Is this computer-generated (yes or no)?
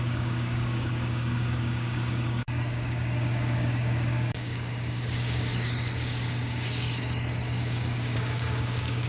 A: yes